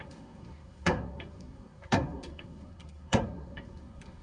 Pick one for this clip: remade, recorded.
remade